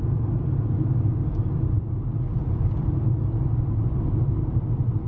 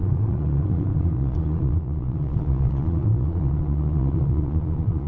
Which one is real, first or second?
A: first